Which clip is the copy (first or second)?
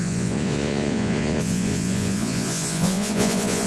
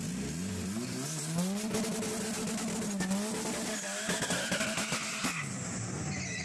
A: first